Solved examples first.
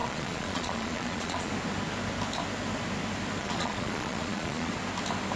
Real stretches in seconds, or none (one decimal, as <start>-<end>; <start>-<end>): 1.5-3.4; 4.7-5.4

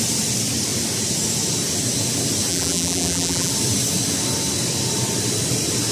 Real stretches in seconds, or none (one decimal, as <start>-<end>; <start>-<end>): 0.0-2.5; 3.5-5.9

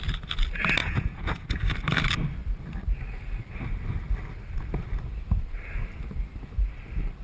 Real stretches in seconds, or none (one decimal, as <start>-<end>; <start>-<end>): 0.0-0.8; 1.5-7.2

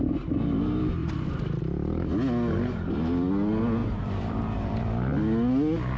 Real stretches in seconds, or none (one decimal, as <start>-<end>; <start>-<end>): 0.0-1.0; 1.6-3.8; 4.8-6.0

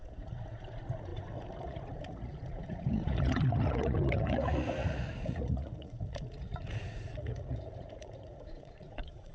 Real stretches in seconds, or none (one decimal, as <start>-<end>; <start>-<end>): none